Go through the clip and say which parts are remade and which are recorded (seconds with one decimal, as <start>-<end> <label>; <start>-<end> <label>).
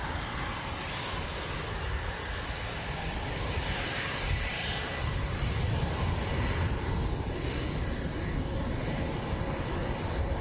0.0-10.4 recorded